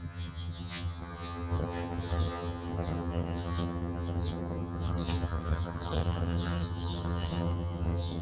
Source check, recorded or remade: remade